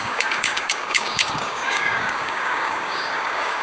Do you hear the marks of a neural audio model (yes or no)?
yes